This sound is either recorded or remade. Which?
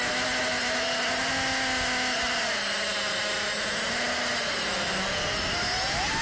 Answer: recorded